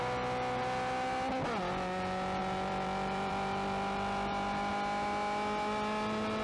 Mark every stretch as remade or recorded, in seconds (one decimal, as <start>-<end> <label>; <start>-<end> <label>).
0.0-2.4 recorded; 2.4-4.7 remade; 4.7-6.4 recorded